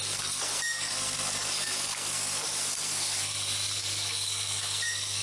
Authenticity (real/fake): fake